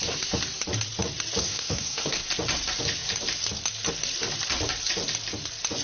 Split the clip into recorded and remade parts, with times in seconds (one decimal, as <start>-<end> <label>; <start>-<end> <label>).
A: 0.0-1.4 recorded; 1.4-2.3 remade; 2.3-5.8 recorded

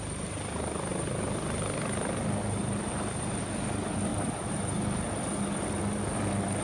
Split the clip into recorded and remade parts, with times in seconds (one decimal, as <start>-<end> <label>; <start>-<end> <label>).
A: 0.0-6.6 recorded